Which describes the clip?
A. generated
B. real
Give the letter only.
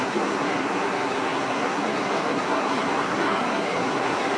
A